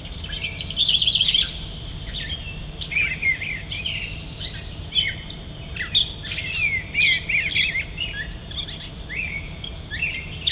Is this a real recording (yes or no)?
yes